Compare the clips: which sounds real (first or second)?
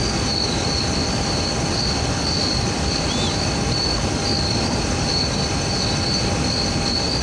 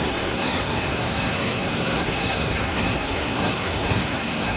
first